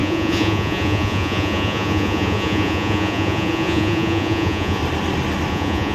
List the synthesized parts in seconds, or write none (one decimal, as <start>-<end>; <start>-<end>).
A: 0.0-4.8; 5.5-5.9